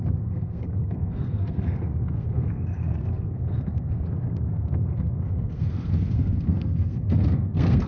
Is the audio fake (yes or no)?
yes